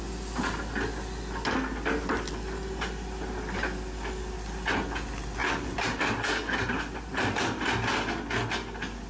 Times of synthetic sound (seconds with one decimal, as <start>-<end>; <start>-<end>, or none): 5.4-6.0